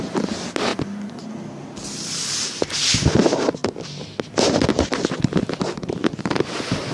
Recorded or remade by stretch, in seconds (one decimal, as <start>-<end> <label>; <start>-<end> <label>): 0.0-6.9 recorded